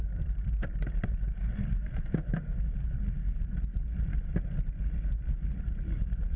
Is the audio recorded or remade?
remade